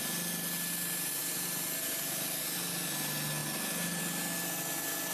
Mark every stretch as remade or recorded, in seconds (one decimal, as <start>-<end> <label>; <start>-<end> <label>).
0.0-5.1 recorded